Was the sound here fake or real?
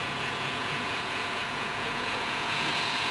fake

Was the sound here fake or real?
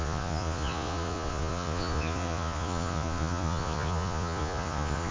fake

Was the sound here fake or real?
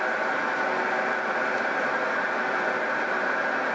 real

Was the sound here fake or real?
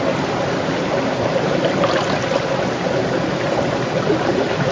real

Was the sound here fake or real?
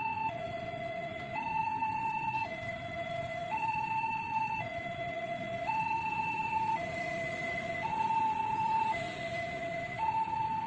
fake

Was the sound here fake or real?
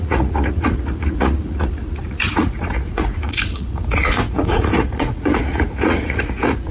fake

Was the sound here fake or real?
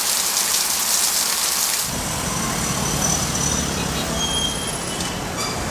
real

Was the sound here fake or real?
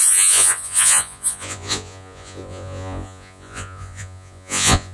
fake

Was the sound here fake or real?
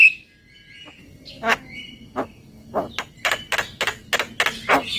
real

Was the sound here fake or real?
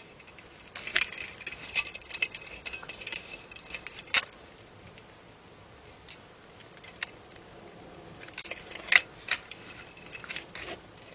real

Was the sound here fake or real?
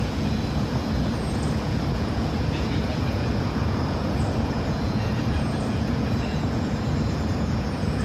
fake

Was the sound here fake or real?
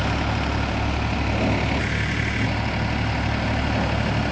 real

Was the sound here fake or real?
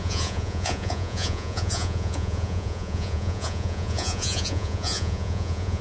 fake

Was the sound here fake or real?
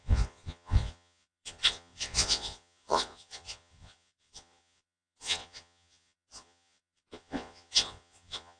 fake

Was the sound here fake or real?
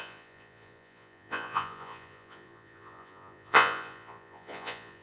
fake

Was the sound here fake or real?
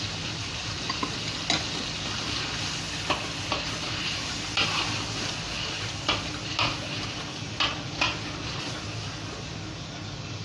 real